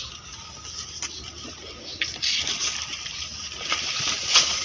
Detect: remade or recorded recorded